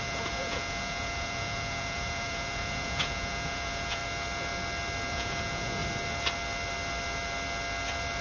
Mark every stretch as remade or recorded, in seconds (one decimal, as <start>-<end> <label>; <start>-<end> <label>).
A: 0.0-4.0 remade; 4.0-5.1 recorded; 5.1-5.8 remade; 5.8-8.2 recorded